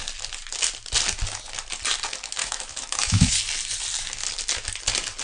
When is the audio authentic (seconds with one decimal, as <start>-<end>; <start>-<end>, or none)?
0.0-2.4; 3.3-5.2